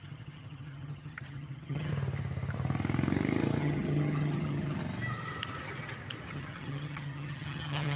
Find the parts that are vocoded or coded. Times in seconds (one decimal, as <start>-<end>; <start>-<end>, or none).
0.0-1.9; 3.6-4.8; 6.3-8.0